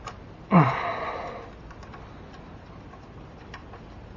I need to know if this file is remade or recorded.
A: recorded